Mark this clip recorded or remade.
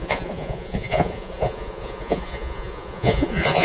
remade